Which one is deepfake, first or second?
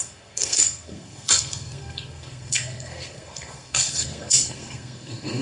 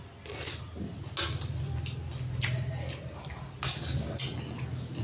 first